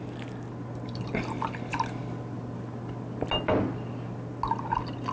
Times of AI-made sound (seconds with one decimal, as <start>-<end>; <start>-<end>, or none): none